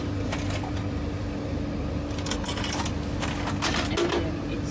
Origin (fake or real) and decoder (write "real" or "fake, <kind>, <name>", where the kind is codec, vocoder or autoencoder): real